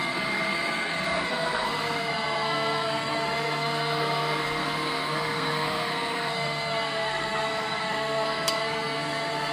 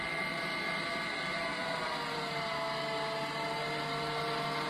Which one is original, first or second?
second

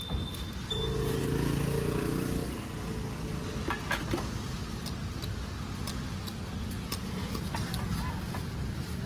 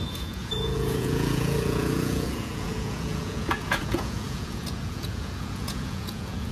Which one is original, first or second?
first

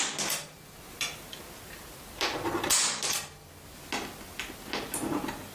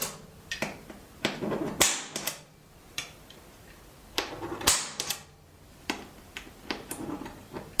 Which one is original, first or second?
first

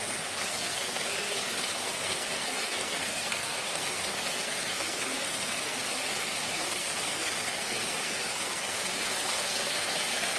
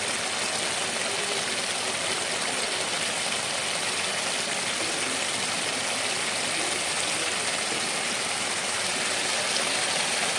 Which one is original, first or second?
second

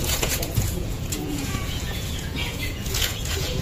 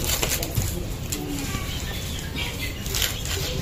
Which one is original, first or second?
second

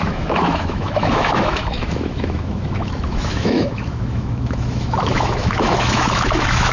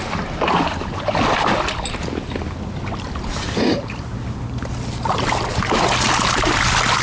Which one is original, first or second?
second